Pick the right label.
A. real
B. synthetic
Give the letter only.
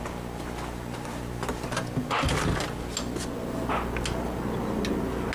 A